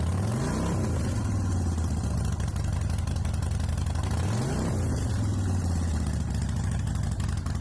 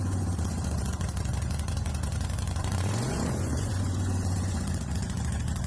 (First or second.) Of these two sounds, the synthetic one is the second